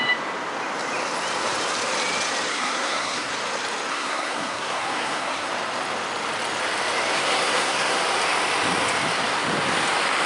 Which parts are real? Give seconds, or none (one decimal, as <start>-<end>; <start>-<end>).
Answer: 0.0-2.5; 3.3-3.9; 5.5-7.1; 8.0-10.3